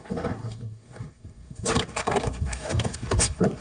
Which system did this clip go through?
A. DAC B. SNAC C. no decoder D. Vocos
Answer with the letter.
B